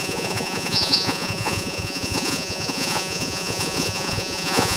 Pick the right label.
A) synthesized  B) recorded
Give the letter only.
A